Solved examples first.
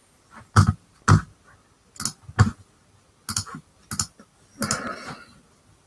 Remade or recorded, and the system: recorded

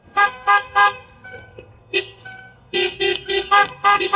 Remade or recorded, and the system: remade, codec, SNAC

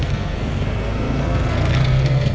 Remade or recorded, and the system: remade, codec, SNAC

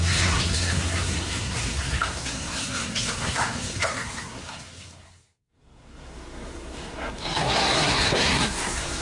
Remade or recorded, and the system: remade, codec, SNAC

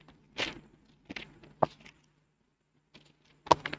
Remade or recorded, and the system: recorded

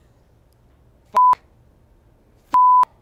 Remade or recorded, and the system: recorded